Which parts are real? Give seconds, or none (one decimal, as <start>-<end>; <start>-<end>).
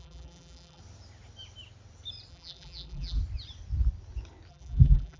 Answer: 0.8-2.3; 3.2-4.5